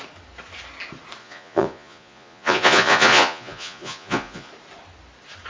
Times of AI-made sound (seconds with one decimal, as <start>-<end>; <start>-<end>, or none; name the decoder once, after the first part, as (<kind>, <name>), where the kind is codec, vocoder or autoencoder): 1.2-4.5 (vocoder, Vocos)